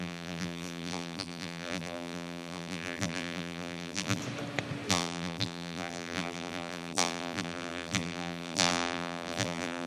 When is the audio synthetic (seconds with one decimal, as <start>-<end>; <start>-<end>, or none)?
0.0-4.2; 4.9-9.9